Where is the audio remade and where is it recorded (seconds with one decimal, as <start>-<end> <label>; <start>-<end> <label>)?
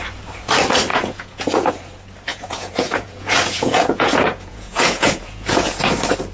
0.0-0.9 recorded; 0.9-1.7 remade; 1.7-2.3 recorded; 2.3-5.8 remade; 5.8-6.3 recorded